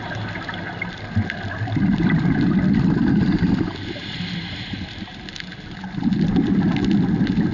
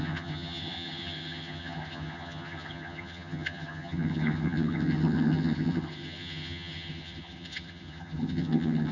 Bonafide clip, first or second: first